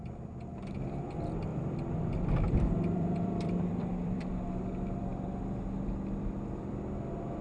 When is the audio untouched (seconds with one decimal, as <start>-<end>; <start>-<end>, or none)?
0.0-1.5; 4.3-5.1; 6.7-7.4